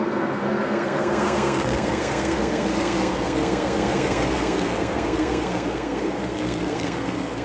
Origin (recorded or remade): remade